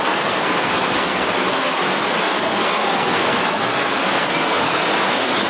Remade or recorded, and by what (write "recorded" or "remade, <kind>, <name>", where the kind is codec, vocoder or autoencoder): remade, codec, SNAC